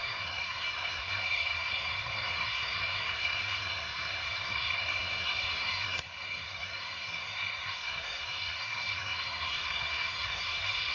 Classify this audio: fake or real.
fake